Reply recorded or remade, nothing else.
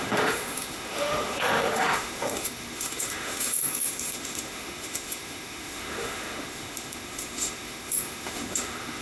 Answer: remade